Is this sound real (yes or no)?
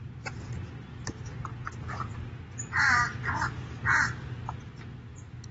yes